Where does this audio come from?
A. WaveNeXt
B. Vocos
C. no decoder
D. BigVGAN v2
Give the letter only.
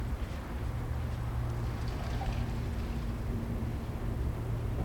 C